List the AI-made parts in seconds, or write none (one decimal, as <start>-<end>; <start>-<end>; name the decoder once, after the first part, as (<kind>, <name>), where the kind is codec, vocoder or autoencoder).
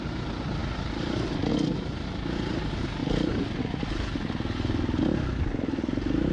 none